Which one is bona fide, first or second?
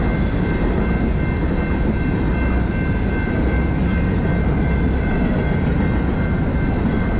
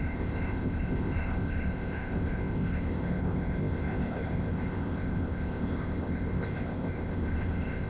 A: first